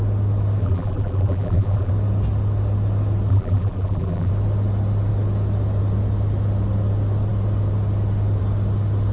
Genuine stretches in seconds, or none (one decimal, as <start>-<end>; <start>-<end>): 0.0-0.6; 1.9-3.3; 4.3-9.1